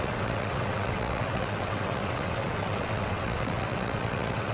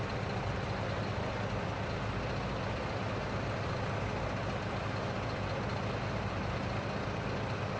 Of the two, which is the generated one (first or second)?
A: first